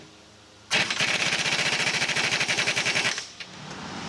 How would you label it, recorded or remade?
recorded